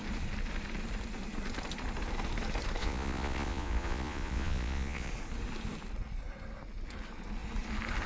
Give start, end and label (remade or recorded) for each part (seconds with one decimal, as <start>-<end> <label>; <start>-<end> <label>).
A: 0.0-2.8 recorded; 2.8-5.1 remade; 5.1-8.1 recorded